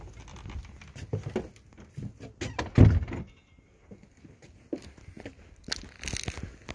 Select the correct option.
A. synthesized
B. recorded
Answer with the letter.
B